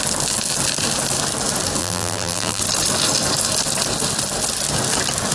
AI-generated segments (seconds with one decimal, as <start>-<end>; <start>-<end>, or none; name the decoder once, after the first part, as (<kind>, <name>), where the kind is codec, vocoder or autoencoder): 1.8-2.6 (vocoder, BigVGAN v2)